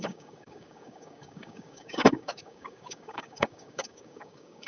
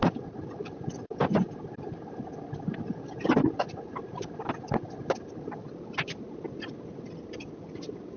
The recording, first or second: second